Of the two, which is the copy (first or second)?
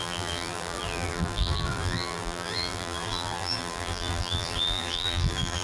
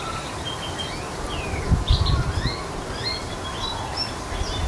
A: first